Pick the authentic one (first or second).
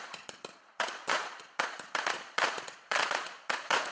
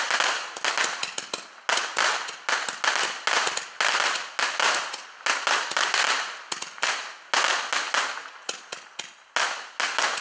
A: second